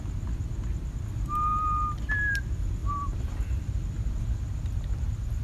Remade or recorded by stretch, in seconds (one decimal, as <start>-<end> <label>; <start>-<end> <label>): 0.0-2.8 recorded; 2.8-4.4 remade; 4.4-5.4 recorded